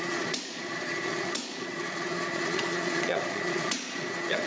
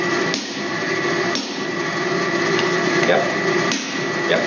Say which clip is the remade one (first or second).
first